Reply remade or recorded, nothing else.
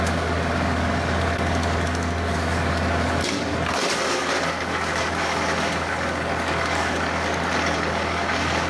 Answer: remade